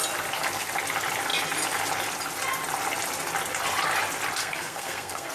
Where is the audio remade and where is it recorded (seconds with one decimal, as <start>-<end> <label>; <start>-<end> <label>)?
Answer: 0.0-4.4 recorded; 4.4-5.3 remade